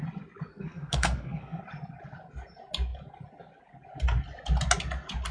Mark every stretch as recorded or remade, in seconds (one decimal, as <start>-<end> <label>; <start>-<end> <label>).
0.0-0.5 recorded; 0.5-1.6 remade; 1.6-5.3 recorded